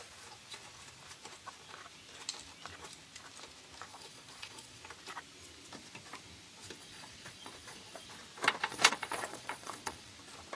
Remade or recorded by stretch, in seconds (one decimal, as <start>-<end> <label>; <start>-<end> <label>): 0.0-3.9 recorded; 3.9-4.8 remade; 4.8-6.8 recorded; 6.8-8.1 remade; 8.1-8.7 recorded; 8.7-10.1 remade; 10.1-10.5 recorded